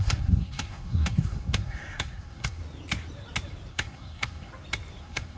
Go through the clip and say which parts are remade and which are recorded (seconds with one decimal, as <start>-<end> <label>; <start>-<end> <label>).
0.0-2.6 remade; 2.6-3.7 recorded; 3.7-4.5 remade; 4.5-5.0 recorded; 5.0-5.4 remade